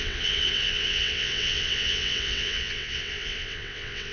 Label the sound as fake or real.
fake